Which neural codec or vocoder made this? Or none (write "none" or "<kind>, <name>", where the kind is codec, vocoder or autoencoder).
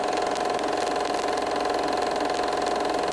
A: none